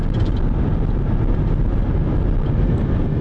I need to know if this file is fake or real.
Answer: real